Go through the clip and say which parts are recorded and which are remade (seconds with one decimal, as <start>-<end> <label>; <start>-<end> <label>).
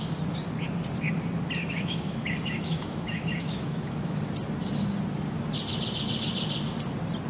0.0-1.6 recorded; 1.6-4.1 remade; 4.1-7.3 recorded